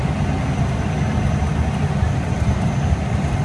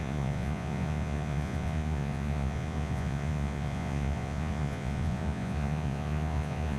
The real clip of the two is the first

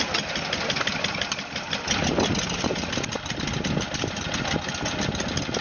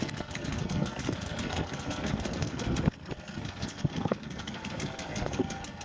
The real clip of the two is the first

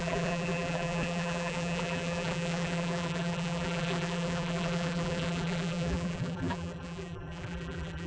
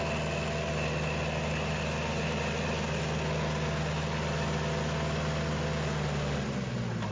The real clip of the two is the second